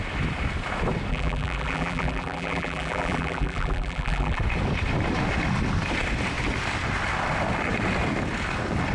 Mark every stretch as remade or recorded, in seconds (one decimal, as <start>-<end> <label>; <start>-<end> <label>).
0.0-1.1 recorded; 1.1-4.4 remade; 4.4-8.9 recorded